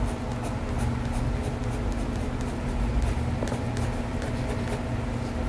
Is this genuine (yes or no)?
yes